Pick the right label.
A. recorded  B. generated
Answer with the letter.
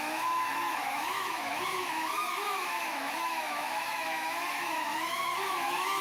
B